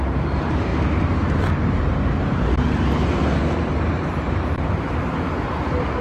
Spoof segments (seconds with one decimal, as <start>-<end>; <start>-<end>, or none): 0.0-6.0